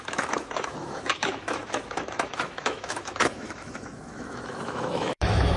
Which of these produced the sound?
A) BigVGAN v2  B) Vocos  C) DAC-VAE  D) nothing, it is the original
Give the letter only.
C